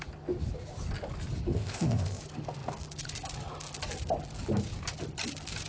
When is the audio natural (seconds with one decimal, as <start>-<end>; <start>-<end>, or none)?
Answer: 0.0-1.5; 2.2-5.7